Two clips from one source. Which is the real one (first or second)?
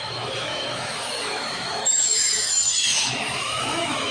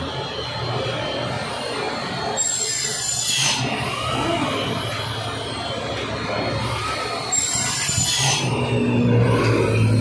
second